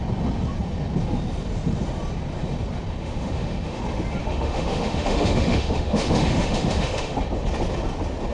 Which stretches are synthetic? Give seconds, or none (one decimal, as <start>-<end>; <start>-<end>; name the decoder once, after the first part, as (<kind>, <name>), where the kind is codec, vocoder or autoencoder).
3.0-3.8 (autoencoder, DAC-VAE); 4.2-7.2